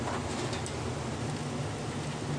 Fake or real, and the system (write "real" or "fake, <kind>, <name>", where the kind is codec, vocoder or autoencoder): real